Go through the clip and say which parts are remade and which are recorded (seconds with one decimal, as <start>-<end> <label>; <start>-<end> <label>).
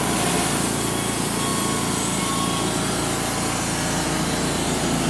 0.0-5.1 recorded